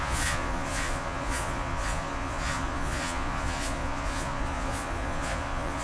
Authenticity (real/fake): fake